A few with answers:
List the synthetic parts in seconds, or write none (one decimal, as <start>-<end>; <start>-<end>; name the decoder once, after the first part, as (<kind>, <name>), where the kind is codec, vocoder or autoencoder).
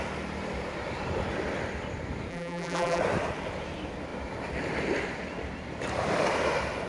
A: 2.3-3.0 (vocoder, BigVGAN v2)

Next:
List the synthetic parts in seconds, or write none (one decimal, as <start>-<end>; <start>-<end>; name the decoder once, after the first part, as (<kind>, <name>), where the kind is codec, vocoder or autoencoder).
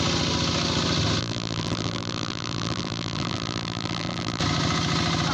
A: 1.2-4.4 (vocoder, BigVGAN v2)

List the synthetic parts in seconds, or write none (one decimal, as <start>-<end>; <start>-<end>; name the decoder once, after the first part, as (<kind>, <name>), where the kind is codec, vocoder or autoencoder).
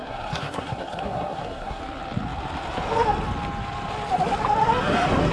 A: 0.0-1.8 (codec, SNAC)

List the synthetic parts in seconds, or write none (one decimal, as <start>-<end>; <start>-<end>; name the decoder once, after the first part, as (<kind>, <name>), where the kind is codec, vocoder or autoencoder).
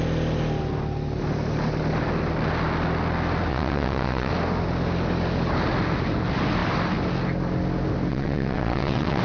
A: 3.5-4.3 (vocoder, WaveNeXt); 8.1-9.2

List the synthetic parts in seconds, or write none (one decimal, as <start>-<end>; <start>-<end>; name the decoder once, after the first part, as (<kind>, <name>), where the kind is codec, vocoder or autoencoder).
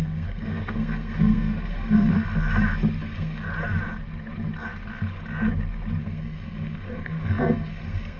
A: 0.0-2.1 (codec, SNAC); 3.0-3.5; 6.0-8.2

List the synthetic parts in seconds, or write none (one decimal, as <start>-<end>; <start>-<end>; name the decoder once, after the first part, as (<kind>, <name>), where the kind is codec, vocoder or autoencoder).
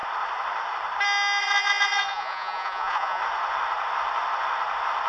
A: 1.4-3.2 (vocoder, Vocos)